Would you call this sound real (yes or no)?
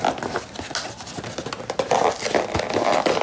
yes